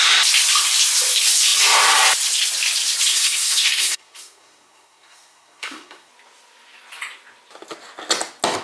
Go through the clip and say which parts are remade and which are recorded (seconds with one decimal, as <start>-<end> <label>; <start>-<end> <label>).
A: 0.0-3.1 recorded; 3.1-6.1 remade; 6.1-8.6 recorded